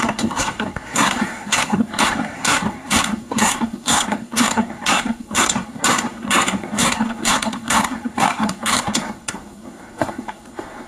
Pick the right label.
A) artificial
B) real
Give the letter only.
A